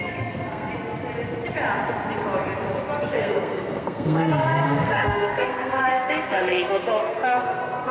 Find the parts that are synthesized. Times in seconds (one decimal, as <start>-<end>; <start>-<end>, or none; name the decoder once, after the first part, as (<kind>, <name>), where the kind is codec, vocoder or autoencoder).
0.0-0.7 (codec, SNAC); 3.1-7.9